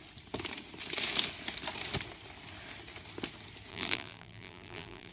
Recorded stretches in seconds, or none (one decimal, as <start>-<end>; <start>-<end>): 0.0-3.7